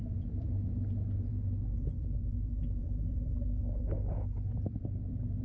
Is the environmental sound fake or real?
fake